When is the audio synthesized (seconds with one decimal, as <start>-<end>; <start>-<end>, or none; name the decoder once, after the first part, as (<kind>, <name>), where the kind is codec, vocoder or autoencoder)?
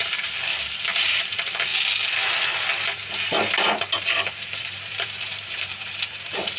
0.0-0.5 (vocoder, BigVGAN v2); 1.0-1.7; 3.8-6.6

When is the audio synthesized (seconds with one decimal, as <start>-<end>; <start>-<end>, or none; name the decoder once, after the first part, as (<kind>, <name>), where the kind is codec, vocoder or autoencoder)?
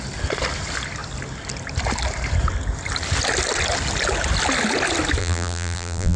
5.2-6.2 (vocoder, BigVGAN v2)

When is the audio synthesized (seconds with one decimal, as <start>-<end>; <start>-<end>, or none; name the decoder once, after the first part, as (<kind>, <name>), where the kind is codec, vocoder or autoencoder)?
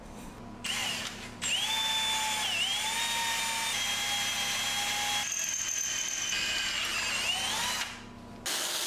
0.8-1.5 (vocoder, BigVGAN v2)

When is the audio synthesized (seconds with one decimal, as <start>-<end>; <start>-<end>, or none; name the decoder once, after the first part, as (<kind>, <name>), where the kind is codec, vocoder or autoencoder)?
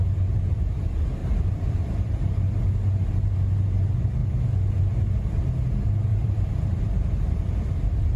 1.2-2.6 (vocoder, BigVGAN v2); 6.1-7.7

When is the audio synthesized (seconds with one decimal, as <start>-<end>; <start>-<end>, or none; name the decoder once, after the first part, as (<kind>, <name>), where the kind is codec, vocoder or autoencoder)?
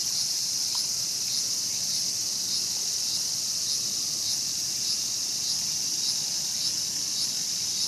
0.0-0.6 (vocoder, BigVGAN v2)